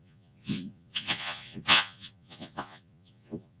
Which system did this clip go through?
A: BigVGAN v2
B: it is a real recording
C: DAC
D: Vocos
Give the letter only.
D